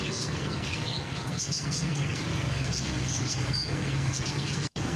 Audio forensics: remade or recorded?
remade